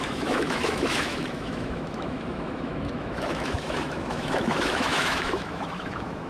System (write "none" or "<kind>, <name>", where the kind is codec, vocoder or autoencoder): autoencoder, DAC-VAE